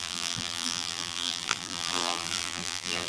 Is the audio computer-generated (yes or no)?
yes